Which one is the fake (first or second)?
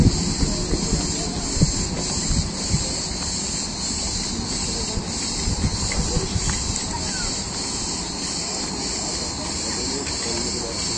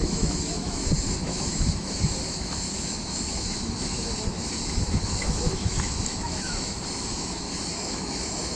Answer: second